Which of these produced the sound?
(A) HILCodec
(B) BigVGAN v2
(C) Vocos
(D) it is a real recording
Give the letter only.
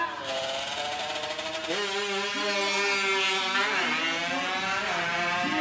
D